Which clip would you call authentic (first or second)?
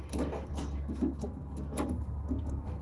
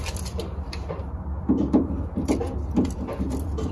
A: second